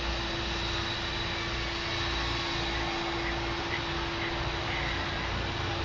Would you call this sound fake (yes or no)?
no